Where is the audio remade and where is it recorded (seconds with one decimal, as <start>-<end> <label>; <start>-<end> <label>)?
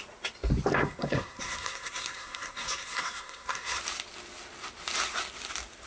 0.0-0.8 recorded; 0.8-3.8 remade; 3.8-5.9 recorded